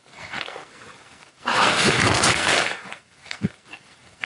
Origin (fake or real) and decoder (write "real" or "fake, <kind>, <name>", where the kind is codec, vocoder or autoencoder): fake, codec, SNAC